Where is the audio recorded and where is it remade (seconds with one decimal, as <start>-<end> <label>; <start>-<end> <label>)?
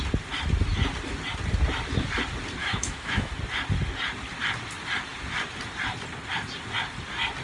0.0-2.6 recorded; 2.6-3.3 remade; 3.3-7.4 recorded